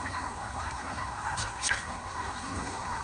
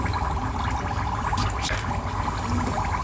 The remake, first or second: first